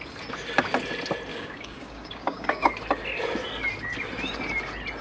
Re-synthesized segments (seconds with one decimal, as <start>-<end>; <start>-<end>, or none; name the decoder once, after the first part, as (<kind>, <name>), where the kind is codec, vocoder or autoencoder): 1.3-2.7 (codec, DAC)